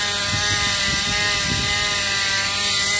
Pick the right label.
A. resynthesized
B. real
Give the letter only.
B